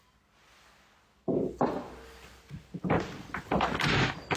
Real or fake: real